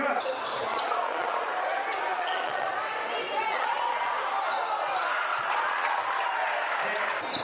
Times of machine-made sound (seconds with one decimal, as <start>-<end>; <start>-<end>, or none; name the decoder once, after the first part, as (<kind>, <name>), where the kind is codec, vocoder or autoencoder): 0.7-1.5 (vocoder, Vocos); 2.1-2.7; 3.4-4.2; 5.3-6.0